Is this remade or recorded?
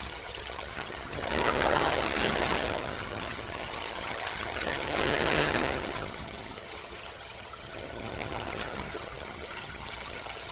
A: remade